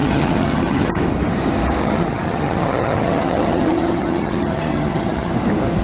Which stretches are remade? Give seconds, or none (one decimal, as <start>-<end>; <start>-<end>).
0.0-1.0; 1.8-5.3